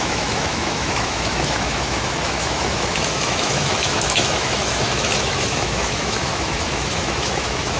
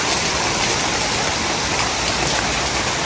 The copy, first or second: first